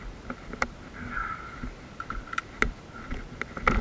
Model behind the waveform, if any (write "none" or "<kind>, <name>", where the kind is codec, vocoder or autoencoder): none